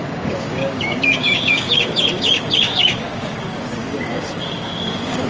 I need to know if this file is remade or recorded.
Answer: remade